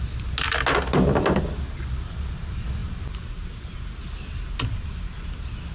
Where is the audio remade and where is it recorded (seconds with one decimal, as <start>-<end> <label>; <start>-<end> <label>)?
0.0-5.7 recorded